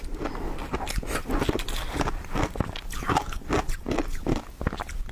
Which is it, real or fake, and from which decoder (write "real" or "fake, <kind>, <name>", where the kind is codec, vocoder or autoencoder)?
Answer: real